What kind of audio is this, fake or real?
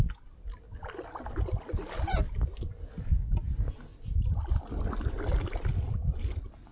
real